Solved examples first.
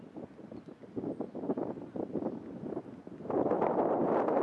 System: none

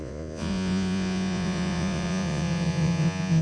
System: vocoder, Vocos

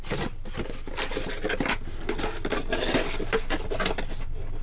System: none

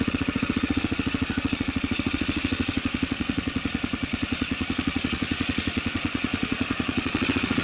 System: vocoder, Vocos